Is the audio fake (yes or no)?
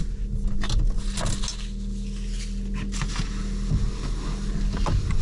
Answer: no